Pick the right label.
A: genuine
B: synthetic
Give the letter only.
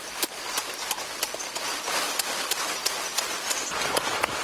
A